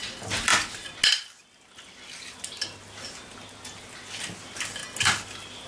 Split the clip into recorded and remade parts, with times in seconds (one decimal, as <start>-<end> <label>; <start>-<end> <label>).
0.0-5.7 recorded